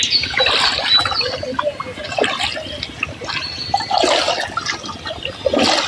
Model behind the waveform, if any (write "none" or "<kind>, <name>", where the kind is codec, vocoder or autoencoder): none